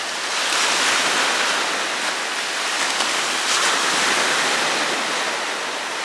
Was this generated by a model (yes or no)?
no